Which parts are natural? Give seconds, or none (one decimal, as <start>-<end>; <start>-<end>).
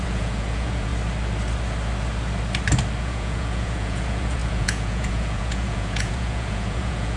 0.9-3.0